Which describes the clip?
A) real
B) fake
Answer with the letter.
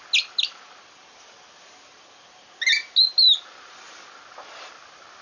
A